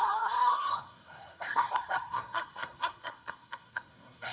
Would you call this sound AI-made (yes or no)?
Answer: yes